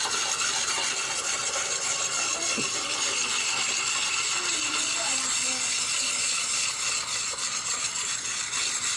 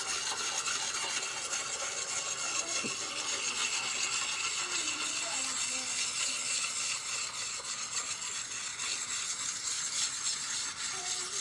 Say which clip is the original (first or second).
second